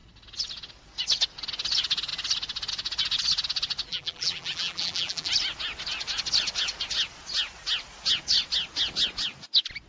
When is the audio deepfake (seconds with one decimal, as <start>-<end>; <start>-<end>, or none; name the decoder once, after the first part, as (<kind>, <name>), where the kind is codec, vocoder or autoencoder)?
3.9-5.3 (vocoder, BigVGAN v2)